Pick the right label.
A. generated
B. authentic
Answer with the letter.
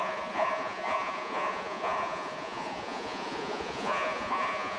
A